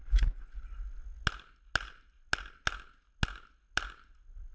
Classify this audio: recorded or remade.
recorded